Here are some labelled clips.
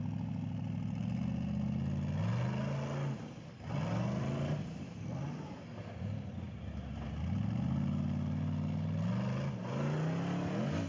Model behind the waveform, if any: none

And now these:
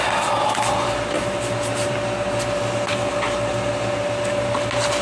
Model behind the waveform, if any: none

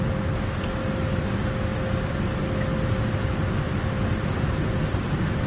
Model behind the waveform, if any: none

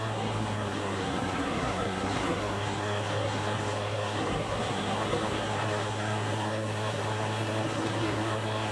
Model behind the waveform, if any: codec, SNAC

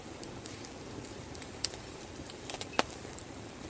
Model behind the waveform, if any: vocoder, BigVGAN v2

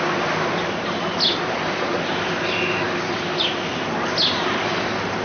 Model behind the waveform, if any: none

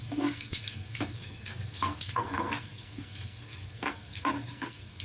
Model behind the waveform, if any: codec, SNAC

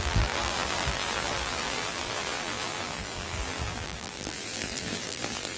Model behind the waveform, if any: vocoder, BigVGAN v2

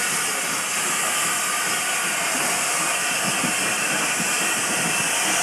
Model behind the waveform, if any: none